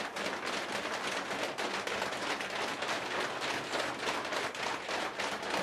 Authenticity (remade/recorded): recorded